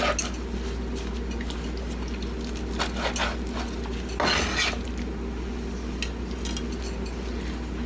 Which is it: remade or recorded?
recorded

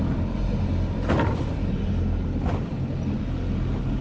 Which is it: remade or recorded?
recorded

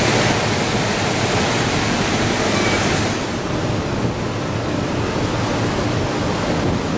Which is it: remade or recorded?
recorded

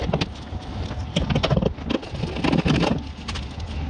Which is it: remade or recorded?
recorded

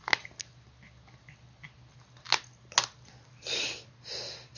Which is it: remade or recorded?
recorded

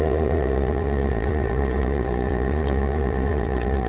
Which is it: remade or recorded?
remade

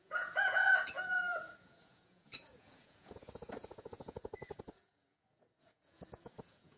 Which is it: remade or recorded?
remade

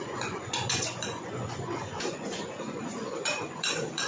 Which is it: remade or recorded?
remade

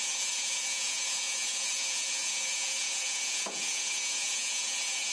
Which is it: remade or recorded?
remade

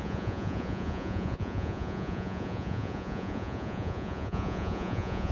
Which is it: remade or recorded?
remade